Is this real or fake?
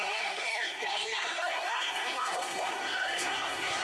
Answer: fake